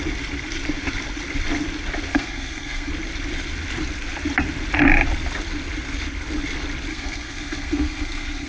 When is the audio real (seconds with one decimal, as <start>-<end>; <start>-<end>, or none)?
0.0-2.1; 2.9-6.9